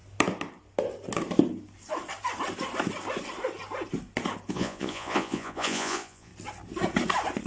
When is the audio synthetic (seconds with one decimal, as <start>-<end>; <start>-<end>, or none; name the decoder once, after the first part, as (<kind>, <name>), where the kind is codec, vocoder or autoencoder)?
4.5-6.3 (vocoder, Vocos)